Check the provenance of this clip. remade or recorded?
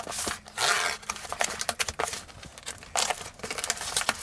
recorded